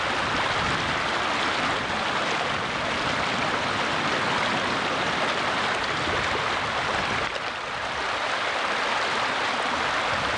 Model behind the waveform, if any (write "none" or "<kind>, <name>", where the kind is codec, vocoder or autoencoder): none